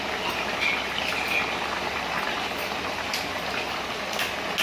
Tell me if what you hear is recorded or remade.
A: recorded